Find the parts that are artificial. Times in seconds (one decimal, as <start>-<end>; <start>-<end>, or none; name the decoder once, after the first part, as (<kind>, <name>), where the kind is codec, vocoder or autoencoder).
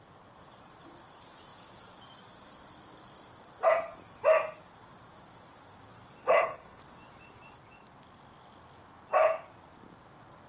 6.2-6.8 (codec, HILCodec)